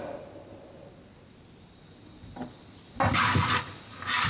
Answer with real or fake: real